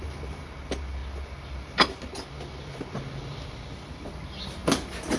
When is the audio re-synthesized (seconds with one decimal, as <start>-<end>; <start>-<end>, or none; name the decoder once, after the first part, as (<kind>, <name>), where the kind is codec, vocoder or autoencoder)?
none